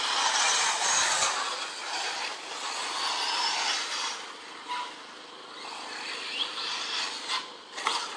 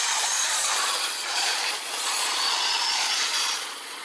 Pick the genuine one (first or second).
first